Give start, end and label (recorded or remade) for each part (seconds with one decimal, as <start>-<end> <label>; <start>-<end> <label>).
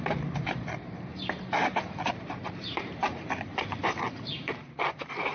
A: 0.0-1.1 remade; 1.1-2.1 recorded; 2.1-5.3 remade